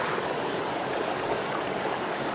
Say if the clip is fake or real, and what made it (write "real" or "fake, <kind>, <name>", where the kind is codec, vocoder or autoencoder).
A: fake, codec, DAC